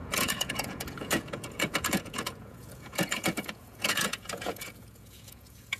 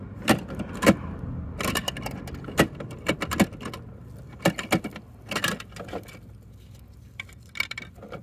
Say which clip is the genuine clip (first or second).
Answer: second